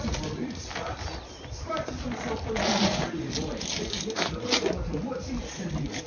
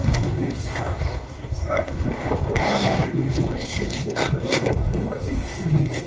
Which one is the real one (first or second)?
first